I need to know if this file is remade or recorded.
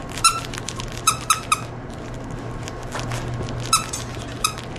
recorded